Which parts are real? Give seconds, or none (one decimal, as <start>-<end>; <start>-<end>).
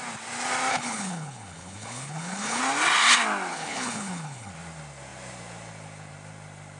0.0-0.7; 2.6-3.5; 4.5-6.8